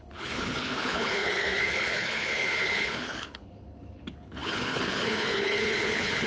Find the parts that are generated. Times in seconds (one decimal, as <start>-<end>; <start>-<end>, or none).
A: 0.0-6.3